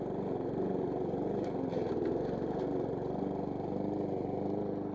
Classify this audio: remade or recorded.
recorded